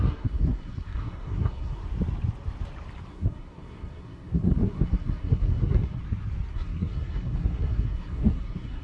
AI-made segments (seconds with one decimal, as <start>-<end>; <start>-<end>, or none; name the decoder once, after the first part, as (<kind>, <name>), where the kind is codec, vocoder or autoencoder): 0.0-1.8 (codec, SNAC); 3.1-6.0; 6.5-8.8